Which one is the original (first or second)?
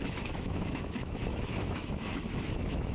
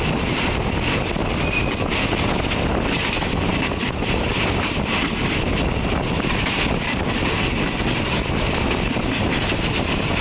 second